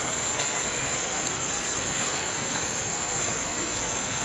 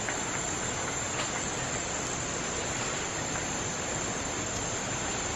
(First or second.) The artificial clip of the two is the first